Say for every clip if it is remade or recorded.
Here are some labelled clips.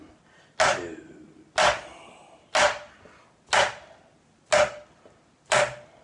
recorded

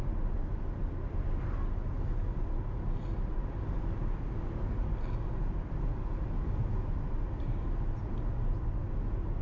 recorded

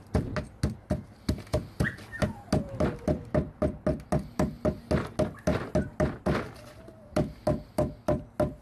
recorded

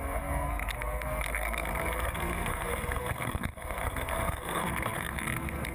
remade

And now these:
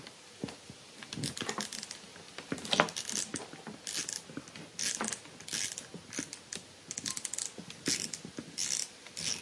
recorded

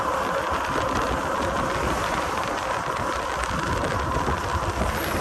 recorded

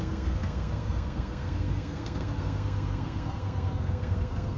remade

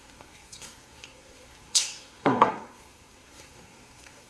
remade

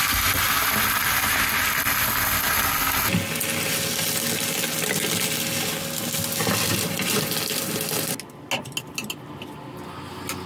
recorded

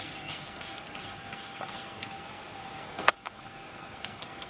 remade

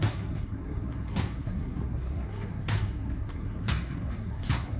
remade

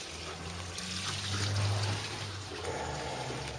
recorded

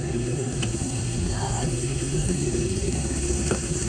remade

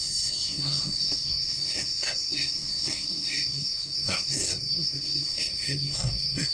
remade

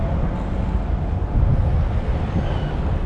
recorded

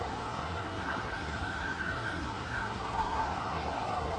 remade